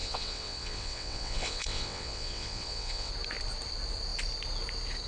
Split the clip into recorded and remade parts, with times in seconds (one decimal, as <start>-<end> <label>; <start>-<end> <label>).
0.0-3.1 remade; 3.1-5.1 recorded